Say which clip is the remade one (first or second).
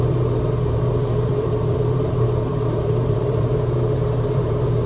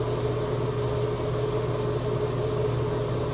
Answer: first